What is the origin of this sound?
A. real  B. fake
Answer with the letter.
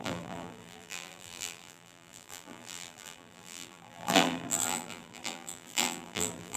B